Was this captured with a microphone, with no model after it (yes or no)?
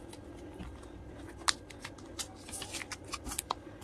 yes